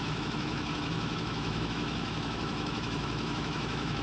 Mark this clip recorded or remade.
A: remade